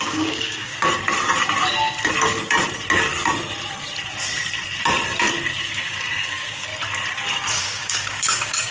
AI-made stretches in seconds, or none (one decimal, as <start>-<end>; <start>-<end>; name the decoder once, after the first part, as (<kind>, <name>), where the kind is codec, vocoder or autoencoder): 0.0-0.7 (codec, DAC); 5.6-6.7; 7.6-8.7

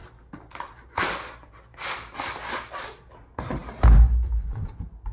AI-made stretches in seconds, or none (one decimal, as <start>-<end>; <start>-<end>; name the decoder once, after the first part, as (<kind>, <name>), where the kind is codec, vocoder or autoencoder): none

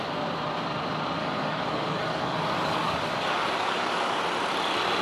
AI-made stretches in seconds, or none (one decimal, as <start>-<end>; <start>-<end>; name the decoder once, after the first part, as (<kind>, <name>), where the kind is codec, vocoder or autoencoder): 1.2-4.2 (codec, DAC)